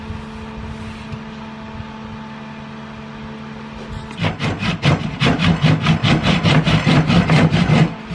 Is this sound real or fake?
real